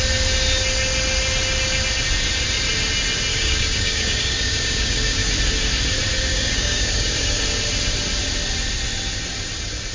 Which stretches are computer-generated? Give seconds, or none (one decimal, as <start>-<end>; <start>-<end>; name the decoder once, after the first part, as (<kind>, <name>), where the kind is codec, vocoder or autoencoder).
3.3-5.3 (codec, DAC); 6.3-7.4